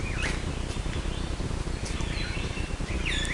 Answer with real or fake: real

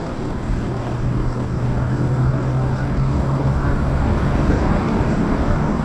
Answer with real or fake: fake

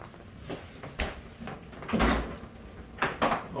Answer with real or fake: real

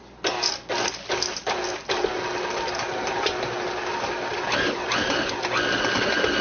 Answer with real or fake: real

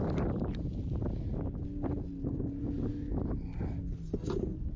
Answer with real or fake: real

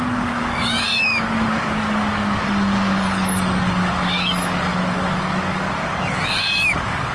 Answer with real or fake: fake